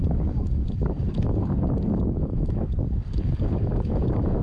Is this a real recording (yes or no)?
no